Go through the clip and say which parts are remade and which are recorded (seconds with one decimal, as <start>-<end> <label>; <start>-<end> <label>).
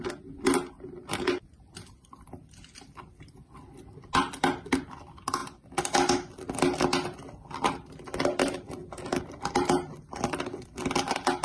0.0-11.4 recorded